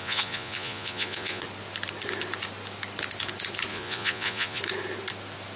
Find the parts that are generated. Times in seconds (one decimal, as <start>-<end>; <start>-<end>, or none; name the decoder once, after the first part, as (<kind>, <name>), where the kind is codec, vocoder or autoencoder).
0.0-1.4 (vocoder, Vocos); 3.7-4.6